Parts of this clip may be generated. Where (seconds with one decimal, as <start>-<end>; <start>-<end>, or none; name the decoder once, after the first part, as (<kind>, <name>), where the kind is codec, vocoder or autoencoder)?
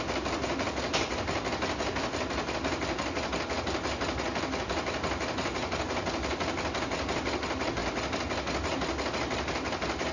none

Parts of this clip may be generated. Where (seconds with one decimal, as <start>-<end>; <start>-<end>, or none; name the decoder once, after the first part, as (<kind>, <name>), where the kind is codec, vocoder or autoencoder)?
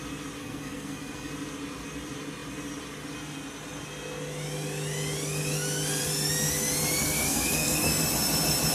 0.4-1.3 (codec, SNAC); 7.0-8.0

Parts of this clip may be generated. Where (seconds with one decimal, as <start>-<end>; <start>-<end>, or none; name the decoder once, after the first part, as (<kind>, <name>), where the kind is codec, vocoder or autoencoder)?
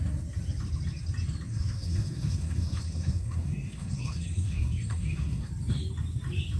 1.5-5.5 (codec, SNAC)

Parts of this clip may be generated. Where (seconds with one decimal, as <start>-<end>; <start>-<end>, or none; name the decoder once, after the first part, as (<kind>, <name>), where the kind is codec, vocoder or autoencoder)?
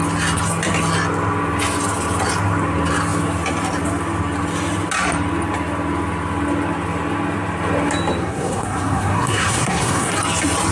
8.2-10.1 (codec, SNAC)